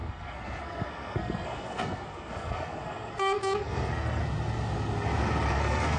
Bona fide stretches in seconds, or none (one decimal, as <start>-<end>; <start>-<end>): 4.2-5.5

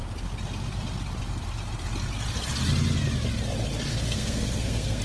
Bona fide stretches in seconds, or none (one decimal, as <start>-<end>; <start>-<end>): 0.0-3.9

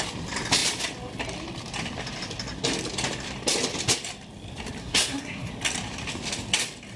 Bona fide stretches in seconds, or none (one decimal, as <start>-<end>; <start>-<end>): 0.0-4.8; 5.5-7.0

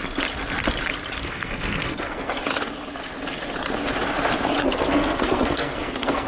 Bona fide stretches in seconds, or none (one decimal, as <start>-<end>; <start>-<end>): 0.0-1.2; 2.4-4.6

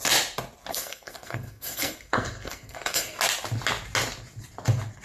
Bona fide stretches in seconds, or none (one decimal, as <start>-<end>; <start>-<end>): 0.0-0.7; 3.2-5.0

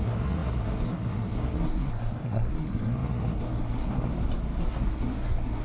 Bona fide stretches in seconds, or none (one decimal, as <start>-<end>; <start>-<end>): 4.1-4.6